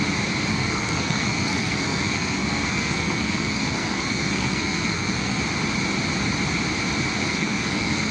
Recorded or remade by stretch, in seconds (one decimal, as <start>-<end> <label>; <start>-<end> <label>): 0.0-0.5 recorded; 0.5-5.4 remade; 5.4-7.2 recorded; 7.2-8.1 remade